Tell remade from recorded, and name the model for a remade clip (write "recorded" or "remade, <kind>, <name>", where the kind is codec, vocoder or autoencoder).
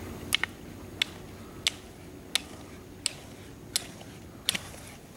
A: recorded